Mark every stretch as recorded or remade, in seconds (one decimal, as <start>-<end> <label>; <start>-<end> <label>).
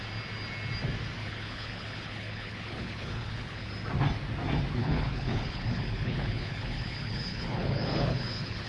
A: 0.0-1.2 recorded; 1.2-3.7 remade; 3.7-4.8 recorded; 4.8-8.7 remade